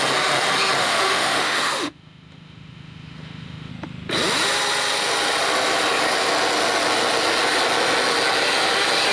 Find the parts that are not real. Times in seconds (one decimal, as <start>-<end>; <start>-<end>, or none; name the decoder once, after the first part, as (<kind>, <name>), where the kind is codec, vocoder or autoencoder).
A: 0.8-3.7 (autoencoder, DAC-VAE)